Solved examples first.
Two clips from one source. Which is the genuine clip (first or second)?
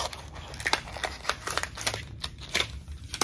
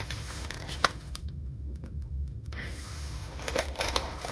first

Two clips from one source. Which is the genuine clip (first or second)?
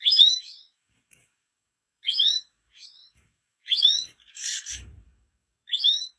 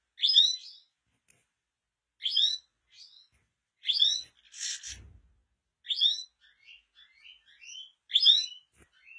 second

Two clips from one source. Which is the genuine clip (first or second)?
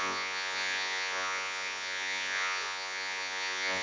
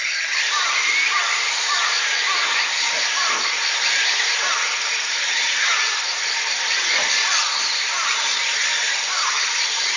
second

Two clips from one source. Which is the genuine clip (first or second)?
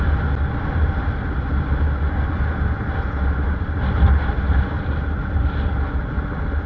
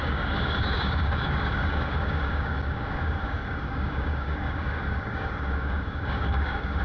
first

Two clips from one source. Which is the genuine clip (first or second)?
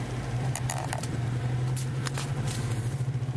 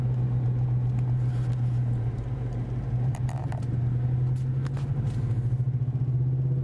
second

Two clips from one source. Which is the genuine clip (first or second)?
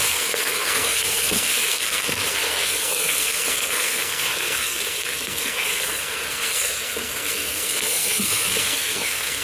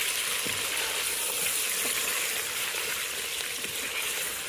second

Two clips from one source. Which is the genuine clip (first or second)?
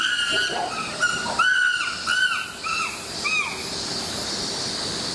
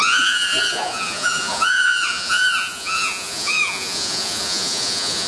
first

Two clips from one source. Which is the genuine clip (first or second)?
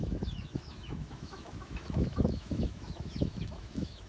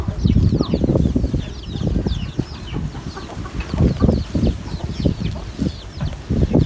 second